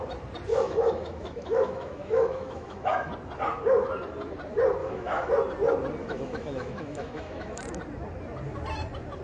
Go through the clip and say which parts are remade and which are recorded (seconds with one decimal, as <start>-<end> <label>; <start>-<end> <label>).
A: 0.0-0.5 recorded; 0.5-3.1 remade; 3.1-4.8 recorded; 4.8-5.3 remade; 5.3-6.0 recorded; 6.0-7.6 remade; 7.6-9.2 recorded

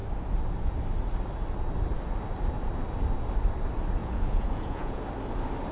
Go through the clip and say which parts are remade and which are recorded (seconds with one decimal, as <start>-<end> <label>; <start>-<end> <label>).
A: 0.0-4.0 recorded; 4.0-5.0 remade; 5.0-5.7 recorded

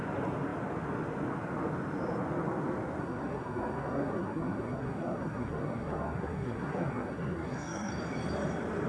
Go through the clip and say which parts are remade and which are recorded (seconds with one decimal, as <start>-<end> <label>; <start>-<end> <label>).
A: 0.0-3.0 recorded; 3.0-7.9 remade; 7.9-8.9 recorded

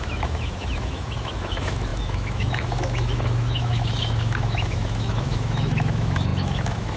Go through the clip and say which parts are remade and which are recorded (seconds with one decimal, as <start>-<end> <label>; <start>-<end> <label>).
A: 0.0-7.0 remade